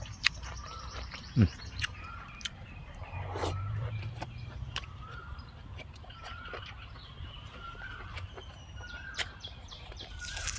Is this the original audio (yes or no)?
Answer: no